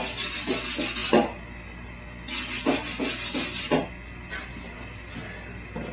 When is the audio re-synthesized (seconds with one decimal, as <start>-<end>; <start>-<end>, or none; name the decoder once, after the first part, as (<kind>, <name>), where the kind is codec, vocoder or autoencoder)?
none

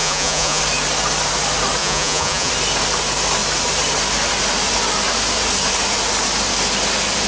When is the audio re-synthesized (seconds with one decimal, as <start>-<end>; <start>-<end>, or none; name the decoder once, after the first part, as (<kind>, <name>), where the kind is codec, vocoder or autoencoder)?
0.0-0.6 (vocoder, Vocos); 1.8-2.5

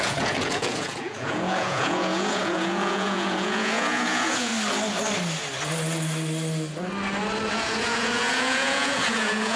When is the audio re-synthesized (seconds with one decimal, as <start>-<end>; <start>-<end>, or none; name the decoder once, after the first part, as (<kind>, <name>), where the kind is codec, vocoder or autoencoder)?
0.0-4.5 (vocoder, Vocos); 7.5-9.6

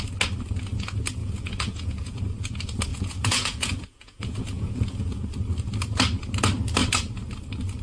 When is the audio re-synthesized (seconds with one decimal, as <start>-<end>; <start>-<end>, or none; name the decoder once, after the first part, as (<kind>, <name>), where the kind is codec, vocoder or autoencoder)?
1.2-2.2 (vocoder, Vocos); 2.9-5.2

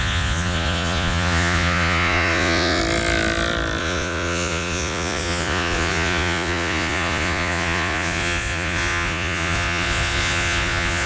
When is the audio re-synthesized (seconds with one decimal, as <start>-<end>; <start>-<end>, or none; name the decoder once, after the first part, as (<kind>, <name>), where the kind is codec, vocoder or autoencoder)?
0.0-2.8 (vocoder, Vocos); 3.8-11.1

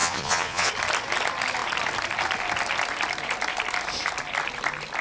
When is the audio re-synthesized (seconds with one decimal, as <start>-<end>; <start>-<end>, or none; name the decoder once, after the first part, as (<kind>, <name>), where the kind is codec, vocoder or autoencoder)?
0.0-0.7 (vocoder, Vocos)